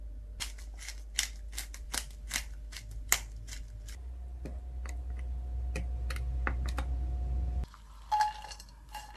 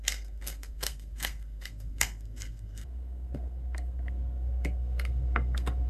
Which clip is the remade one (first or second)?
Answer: second